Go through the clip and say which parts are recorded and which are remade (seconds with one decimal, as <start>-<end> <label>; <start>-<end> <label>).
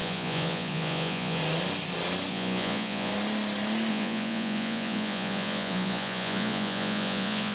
0.0-1.4 remade; 1.4-2.3 recorded; 2.3-3.1 remade; 3.1-3.9 recorded; 3.9-7.5 remade